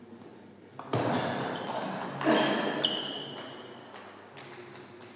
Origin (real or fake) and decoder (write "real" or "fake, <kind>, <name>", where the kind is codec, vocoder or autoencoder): real